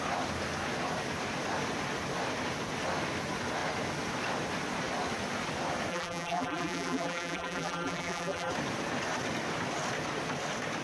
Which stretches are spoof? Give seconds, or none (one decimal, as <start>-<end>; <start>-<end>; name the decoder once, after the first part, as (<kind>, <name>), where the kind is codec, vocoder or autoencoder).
5.9-8.5 (vocoder, BigVGAN v2)